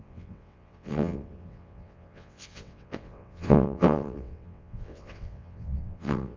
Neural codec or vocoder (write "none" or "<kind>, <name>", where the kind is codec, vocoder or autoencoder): vocoder, WaveNeXt